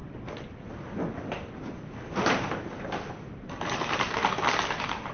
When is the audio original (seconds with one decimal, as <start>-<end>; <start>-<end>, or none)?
0.0-5.1